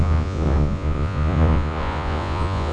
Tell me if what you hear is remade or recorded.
remade